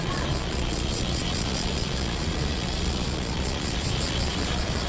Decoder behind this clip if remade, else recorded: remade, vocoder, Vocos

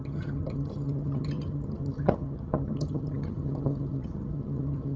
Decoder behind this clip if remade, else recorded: remade, vocoder, HiFi-GAN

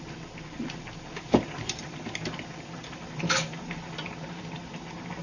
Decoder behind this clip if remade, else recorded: recorded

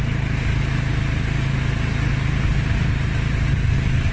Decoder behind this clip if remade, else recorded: recorded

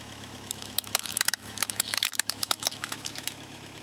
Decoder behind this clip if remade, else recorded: remade, autoencoder, DAC-VAE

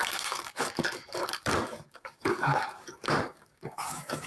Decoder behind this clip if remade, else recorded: remade, codec, DAC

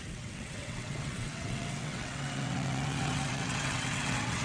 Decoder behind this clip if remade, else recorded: remade, vocoder, WaveNeXt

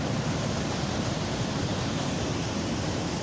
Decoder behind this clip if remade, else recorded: remade, vocoder, BigVGAN v2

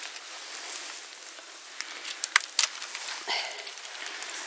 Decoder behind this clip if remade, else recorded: recorded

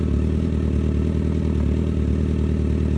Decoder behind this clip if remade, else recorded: recorded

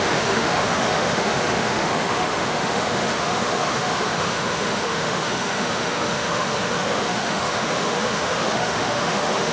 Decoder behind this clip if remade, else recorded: remade, autoencoder, DAC-VAE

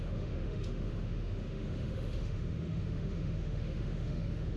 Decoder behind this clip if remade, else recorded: remade, autoencoder, DAC-VAE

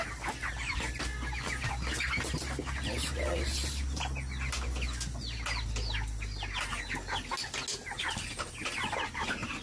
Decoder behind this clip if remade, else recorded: recorded